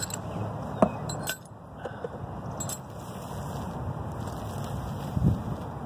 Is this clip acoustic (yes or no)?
yes